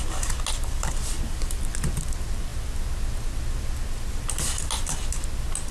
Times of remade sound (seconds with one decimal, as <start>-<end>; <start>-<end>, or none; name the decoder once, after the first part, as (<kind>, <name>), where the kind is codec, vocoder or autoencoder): none